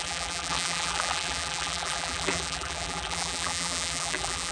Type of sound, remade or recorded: remade